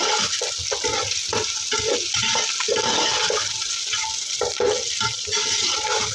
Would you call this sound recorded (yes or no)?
yes